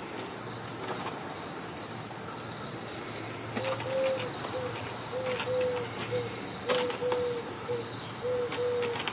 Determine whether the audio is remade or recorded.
recorded